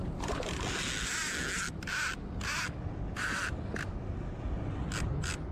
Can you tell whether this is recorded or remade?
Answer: recorded